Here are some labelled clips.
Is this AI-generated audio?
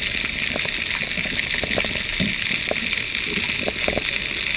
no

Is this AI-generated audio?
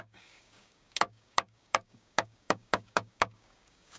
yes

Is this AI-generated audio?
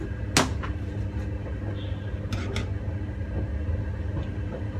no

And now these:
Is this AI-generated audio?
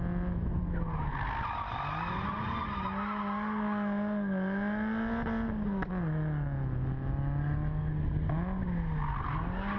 no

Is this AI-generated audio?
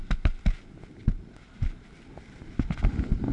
no